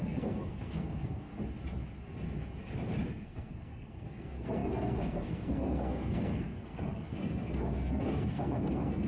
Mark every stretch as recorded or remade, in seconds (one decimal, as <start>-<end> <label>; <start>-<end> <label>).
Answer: 0.0-1.3 remade; 1.3-3.1 recorded; 3.1-9.1 remade